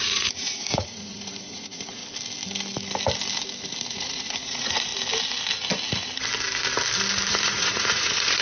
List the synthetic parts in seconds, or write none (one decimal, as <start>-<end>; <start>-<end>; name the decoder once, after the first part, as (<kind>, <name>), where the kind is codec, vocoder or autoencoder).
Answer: 0.0-2.0 (vocoder, Vocos); 3.9-4.9; 7.3-8.4